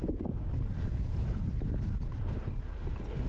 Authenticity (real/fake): real